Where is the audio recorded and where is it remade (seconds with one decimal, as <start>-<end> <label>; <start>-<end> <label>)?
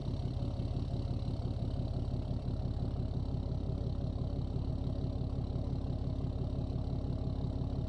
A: 0.0-4.7 remade; 4.7-7.9 recorded